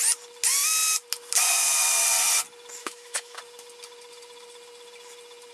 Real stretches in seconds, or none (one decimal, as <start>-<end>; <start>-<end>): 0.0-2.8; 3.4-5.5

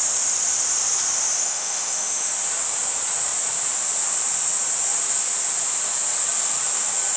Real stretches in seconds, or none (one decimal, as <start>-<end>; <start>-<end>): 0.0-1.4; 2.3-7.2

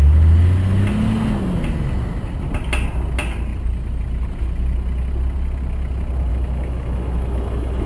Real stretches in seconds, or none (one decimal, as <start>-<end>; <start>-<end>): 0.0-6.3

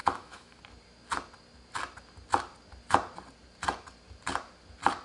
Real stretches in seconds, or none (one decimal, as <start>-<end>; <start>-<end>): 0.6-5.0

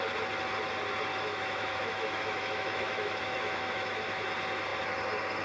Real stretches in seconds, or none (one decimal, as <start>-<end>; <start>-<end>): 0.0-1.1; 4.3-5.4